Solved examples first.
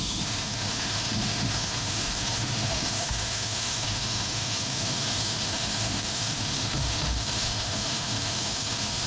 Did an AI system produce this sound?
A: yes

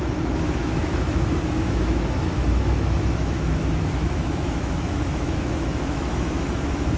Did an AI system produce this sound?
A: yes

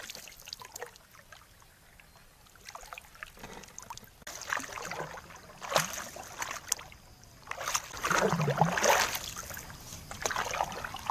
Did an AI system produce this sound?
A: no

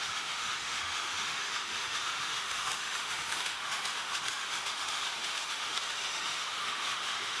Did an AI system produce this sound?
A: yes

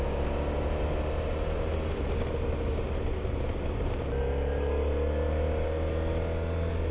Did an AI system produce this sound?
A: no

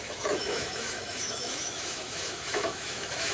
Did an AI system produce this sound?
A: yes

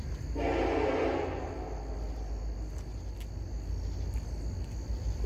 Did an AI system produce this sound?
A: no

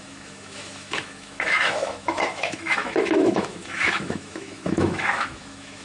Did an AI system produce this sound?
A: yes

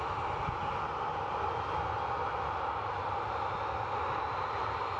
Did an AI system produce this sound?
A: no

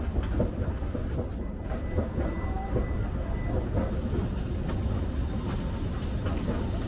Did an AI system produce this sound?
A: no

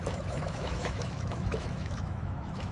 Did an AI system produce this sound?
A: yes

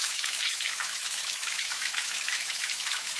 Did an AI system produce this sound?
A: yes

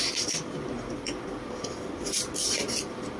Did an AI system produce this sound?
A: no